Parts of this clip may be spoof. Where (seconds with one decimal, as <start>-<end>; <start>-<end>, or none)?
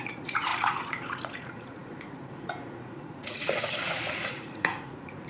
0.0-5.3